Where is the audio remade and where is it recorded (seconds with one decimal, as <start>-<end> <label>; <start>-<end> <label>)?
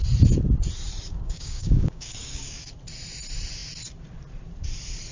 0.0-1.1 recorded; 1.1-2.6 remade; 2.6-5.1 recorded